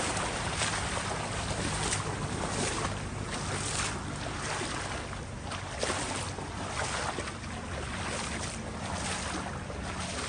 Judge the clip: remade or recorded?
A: recorded